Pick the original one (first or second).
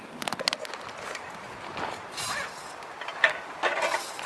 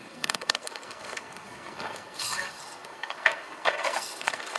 first